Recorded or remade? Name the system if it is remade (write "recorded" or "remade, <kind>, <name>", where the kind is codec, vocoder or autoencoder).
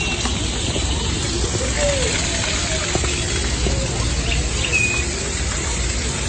recorded